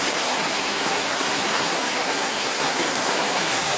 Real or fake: fake